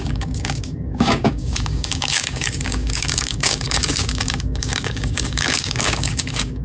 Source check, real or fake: fake